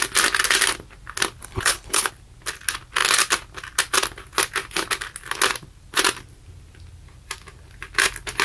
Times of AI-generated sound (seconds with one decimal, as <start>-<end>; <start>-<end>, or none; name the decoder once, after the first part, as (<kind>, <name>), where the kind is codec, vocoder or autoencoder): 1.4-2.1 (codec, HILCodec)